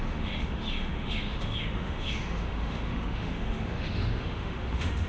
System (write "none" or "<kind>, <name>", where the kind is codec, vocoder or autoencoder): autoencoder, DAC-VAE